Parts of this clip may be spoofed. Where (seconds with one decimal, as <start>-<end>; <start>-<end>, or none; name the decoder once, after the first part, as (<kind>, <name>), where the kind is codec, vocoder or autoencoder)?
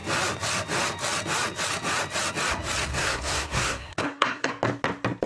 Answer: 2.9-4.5 (codec, SNAC)